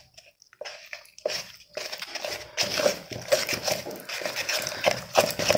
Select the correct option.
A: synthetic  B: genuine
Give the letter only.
B